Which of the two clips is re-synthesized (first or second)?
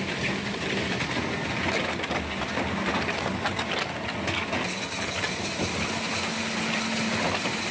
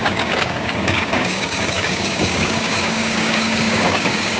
second